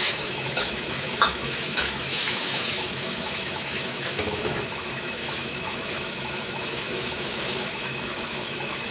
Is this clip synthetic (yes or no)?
yes